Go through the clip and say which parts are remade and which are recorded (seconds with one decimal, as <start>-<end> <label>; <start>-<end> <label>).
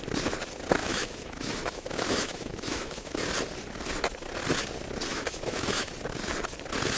0.0-0.8 recorded; 0.8-3.3 remade; 3.3-5.1 recorded; 5.1-5.9 remade; 5.9-7.0 recorded